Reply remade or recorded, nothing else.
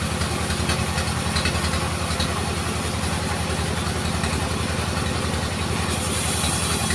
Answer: recorded